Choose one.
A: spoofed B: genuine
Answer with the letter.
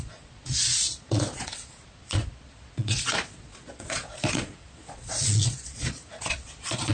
A